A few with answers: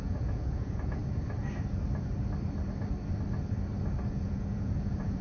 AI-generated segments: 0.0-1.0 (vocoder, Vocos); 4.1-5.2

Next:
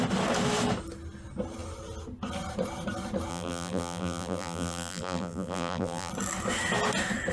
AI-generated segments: 3.3-6.1 (vocoder, BigVGAN v2)

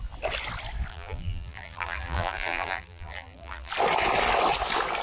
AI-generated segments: 0.9-3.7 (vocoder, BigVGAN v2)